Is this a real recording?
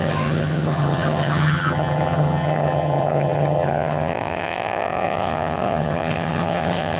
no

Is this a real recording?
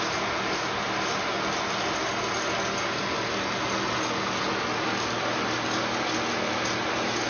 yes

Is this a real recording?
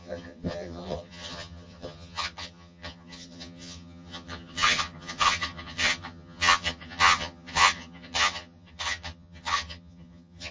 no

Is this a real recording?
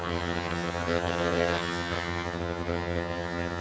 no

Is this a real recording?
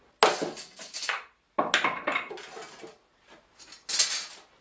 yes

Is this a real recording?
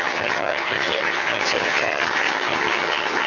no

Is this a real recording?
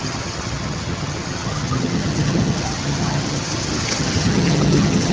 no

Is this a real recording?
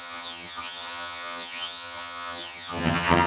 no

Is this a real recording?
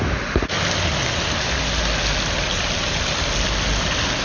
yes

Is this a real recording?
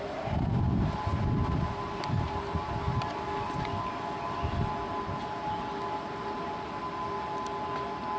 yes